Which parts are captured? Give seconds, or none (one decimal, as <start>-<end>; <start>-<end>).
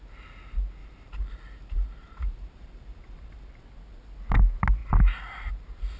0.0-0.8; 3.5-6.0